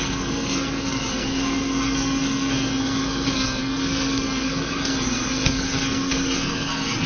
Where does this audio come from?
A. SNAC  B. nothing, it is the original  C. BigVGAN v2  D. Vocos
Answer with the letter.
A